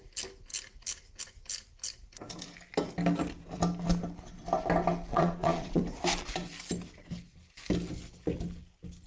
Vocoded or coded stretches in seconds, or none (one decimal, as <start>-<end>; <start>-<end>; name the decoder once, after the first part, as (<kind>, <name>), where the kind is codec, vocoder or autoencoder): 5.1-5.8 (vocoder, Vocos)